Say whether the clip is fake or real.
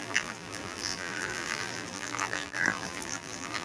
fake